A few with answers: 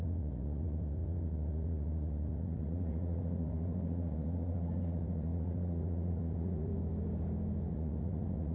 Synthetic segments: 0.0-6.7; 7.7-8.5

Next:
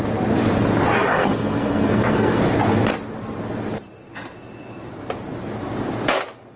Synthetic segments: 1.1-2.4

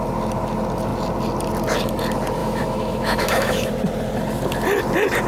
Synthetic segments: 2.4-3.7